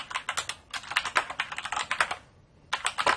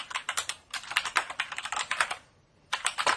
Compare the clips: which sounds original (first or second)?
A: first